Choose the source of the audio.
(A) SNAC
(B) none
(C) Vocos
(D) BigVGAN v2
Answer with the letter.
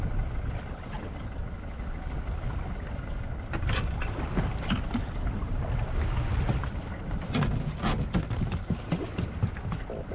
B